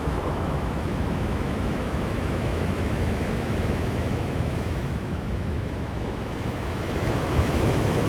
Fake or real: fake